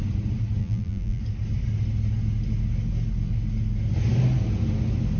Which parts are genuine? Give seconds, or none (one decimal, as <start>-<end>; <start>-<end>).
0.0-0.6; 1.2-5.2